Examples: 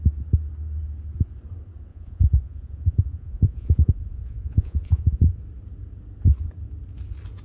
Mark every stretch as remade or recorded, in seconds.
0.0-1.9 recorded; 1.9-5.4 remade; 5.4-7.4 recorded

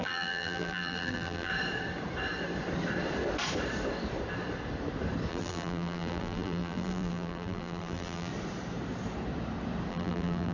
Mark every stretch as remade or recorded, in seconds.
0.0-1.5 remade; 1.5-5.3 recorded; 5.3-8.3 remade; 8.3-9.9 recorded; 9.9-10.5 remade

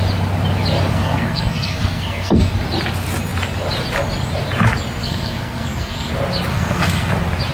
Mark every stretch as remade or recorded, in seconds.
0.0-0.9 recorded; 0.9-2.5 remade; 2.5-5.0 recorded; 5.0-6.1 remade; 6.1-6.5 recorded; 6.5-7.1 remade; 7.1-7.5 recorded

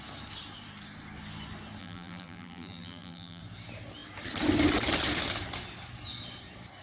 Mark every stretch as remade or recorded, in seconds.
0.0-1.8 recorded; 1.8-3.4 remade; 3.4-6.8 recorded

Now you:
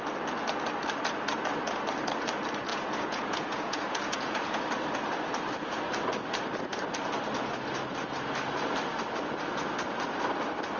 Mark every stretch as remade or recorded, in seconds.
0.0-2.7 recorded; 2.7-4.6 remade; 4.6-10.8 recorded

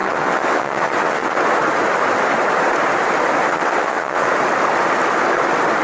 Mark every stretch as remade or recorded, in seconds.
0.0-1.4 remade; 1.4-3.5 recorded; 3.5-4.3 remade; 4.3-5.8 recorded